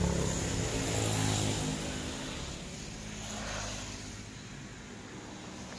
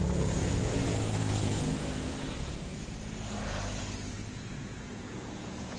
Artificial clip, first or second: second